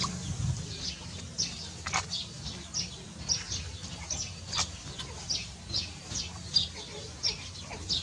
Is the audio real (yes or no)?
yes